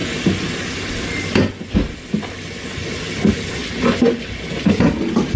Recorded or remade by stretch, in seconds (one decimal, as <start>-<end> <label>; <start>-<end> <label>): 0.0-5.4 recorded